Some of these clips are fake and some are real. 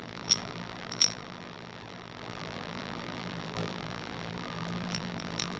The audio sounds fake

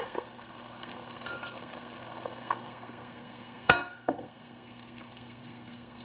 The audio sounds fake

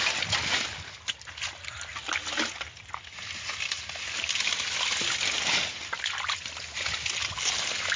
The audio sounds real